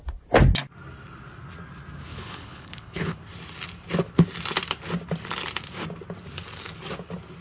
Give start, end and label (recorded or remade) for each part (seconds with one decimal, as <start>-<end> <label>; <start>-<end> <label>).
0.0-2.1 recorded; 2.1-3.2 remade; 3.2-7.4 recorded

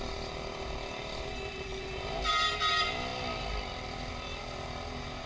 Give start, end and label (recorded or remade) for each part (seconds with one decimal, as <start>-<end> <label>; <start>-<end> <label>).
0.0-5.3 recorded

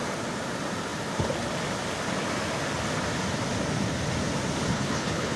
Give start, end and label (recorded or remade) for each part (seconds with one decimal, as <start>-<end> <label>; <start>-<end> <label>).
0.0-4.7 recorded; 4.7-5.4 remade

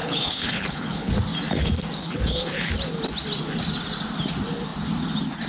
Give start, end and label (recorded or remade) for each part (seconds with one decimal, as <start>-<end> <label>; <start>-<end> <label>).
0.0-1.1 remade; 1.1-2.0 recorded; 2.0-2.7 remade; 2.7-5.5 recorded

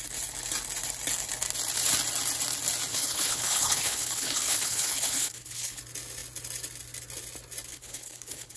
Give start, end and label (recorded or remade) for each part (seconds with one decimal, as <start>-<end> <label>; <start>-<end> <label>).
0.0-2.9 recorded; 2.9-5.8 remade; 5.8-7.7 recorded; 7.7-8.6 remade

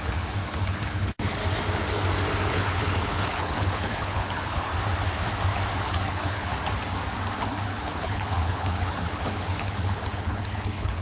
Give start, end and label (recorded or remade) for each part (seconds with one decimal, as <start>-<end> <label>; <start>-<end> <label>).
0.0-1.4 remade; 1.4-2.5 recorded; 2.5-4.7 remade; 4.7-5.8 recorded; 5.8-6.5 remade; 6.5-7.4 recorded; 7.4-11.0 remade

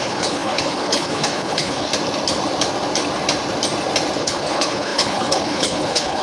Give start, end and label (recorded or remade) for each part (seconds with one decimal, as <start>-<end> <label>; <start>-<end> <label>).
0.0-1.9 remade; 1.9-4.2 recorded; 4.2-6.2 remade

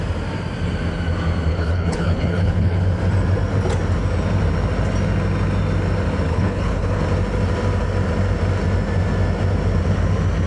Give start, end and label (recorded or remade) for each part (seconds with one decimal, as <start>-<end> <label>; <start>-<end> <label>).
0.0-1.5 recorded; 1.5-2.8 remade; 2.8-6.3 recorded; 6.3-7.0 remade; 7.0-10.5 recorded